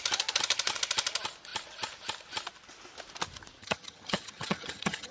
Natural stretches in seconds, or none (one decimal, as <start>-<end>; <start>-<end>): 0.0-3.6